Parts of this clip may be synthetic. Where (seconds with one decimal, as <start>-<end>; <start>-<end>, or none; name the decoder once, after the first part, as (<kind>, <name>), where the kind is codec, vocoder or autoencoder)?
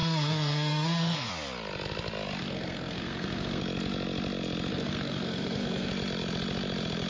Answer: 0.0-1.3 (codec, SNAC); 2.4-3.6; 4.7-5.9